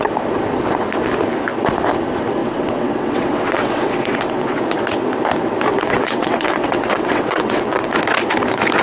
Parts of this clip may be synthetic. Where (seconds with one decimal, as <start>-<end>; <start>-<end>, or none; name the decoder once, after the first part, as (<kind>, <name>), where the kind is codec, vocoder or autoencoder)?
2.4-4.6 (vocoder, WaveNeXt); 5.7-7.9